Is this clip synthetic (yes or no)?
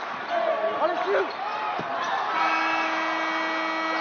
no